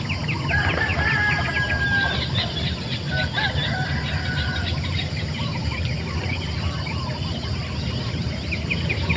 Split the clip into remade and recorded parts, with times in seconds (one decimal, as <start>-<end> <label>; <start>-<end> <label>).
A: 0.0-9.2 recorded